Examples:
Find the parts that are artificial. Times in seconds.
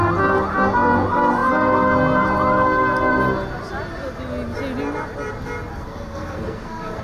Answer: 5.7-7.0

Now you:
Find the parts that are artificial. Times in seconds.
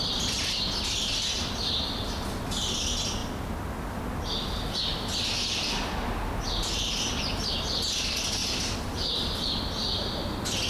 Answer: 8.4-9.5